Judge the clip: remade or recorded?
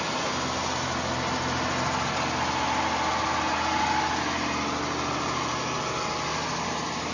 recorded